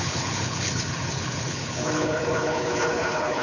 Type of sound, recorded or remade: remade